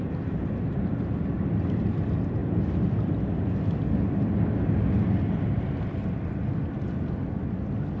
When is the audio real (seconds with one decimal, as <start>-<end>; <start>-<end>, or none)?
0.9-8.0